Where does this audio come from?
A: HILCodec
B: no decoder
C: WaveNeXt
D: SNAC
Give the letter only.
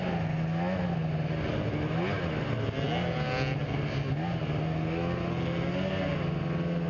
B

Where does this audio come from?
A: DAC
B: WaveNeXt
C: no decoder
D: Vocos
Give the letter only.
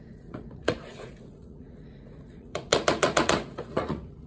D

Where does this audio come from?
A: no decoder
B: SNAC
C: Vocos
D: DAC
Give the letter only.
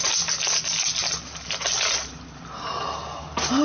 A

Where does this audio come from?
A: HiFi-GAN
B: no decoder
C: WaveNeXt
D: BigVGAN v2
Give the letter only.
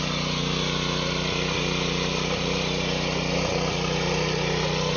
B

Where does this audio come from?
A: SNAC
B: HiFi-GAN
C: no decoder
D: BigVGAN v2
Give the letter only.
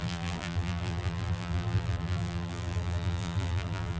D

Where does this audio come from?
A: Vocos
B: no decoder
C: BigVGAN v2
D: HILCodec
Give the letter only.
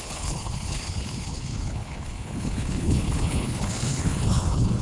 D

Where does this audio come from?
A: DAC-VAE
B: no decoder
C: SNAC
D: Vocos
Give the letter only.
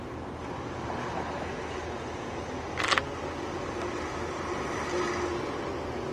B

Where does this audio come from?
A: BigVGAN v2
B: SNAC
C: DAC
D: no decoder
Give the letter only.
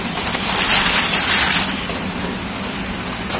D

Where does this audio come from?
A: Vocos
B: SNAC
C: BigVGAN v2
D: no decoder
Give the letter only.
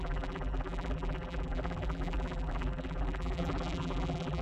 C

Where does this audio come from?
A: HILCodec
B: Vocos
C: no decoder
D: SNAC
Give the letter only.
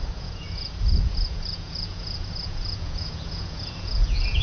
B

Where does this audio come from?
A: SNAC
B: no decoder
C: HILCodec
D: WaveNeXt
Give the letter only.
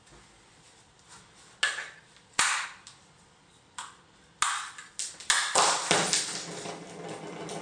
B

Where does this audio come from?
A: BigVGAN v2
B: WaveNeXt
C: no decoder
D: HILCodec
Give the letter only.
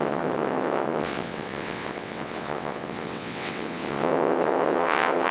B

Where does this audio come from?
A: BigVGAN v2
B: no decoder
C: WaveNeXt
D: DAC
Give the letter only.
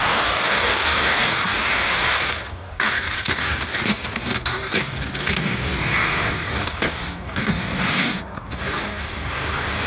D